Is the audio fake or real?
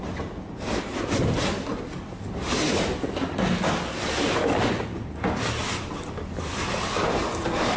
real